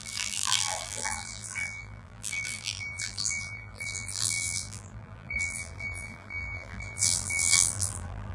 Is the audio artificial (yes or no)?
yes